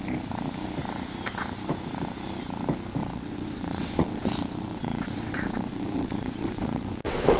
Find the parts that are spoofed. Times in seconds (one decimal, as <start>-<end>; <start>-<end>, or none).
3.0-7.4